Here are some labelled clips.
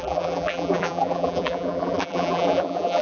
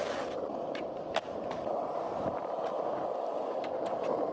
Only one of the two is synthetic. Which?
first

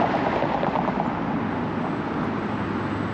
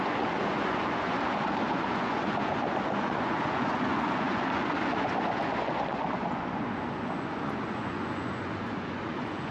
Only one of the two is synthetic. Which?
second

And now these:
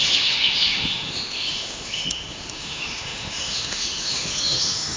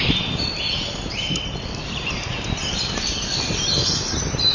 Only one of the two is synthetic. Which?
first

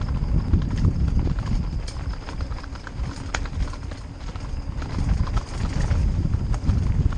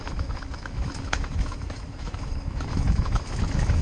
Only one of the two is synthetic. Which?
second